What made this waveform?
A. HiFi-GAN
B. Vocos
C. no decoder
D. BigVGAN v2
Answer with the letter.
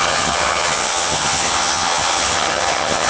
A